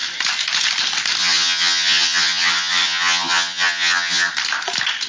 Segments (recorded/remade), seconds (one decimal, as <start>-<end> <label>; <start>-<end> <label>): 0.0-1.2 recorded; 1.2-4.3 remade; 4.3-5.1 recorded